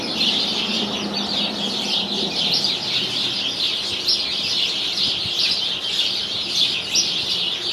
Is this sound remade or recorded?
recorded